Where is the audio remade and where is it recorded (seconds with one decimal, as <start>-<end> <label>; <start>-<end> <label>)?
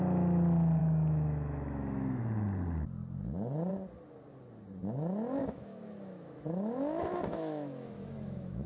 0.0-0.8 recorded; 0.8-2.2 remade; 2.2-5.4 recorded; 5.4-8.7 remade